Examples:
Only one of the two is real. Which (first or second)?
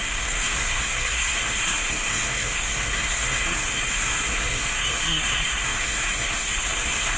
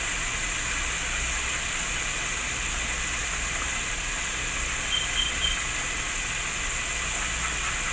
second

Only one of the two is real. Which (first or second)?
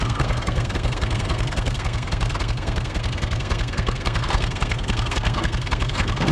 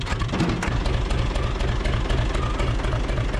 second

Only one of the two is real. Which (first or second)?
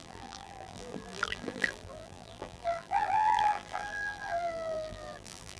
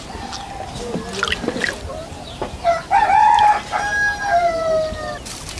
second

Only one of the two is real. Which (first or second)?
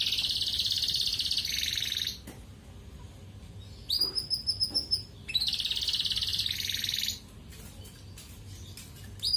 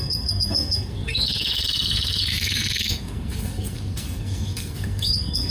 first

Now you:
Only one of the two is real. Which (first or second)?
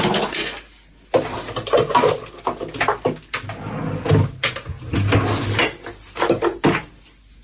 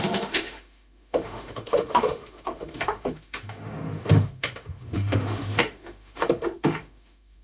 first